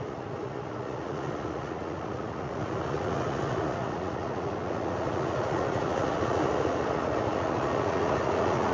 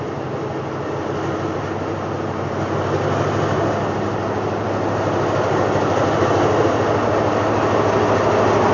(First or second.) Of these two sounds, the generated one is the first